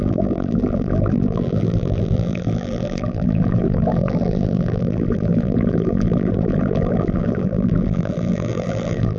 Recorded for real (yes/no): no